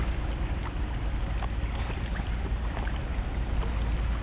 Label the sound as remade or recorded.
recorded